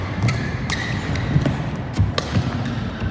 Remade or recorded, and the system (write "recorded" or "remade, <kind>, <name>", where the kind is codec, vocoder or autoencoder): recorded